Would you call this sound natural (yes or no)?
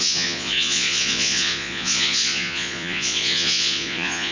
no